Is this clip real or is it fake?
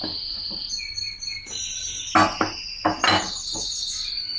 real